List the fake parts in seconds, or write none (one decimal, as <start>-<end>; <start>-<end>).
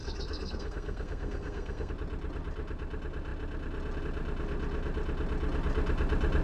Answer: 0.0-1.9